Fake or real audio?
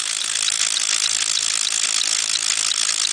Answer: real